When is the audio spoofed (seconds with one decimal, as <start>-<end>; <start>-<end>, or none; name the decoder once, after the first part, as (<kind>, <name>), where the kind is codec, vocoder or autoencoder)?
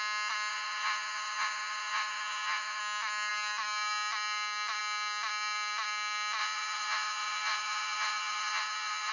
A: 0.5-2.8 (vocoder, Vocos); 6.4-9.1